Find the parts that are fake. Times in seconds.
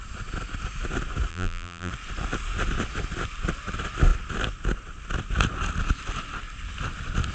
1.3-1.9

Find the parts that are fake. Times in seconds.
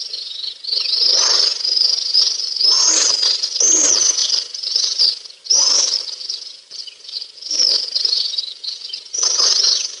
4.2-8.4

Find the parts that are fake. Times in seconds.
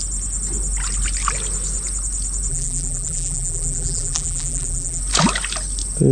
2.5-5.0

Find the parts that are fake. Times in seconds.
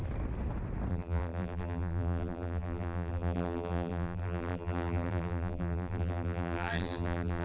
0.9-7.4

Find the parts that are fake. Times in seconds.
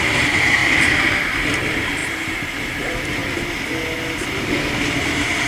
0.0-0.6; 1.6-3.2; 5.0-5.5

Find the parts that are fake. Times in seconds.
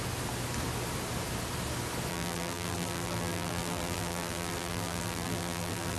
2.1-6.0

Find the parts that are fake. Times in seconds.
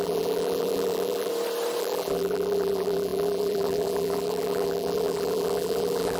0.0-1.3; 1.8-6.2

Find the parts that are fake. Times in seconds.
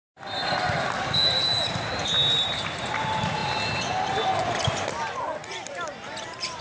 0.4-1.9; 5.4-6.6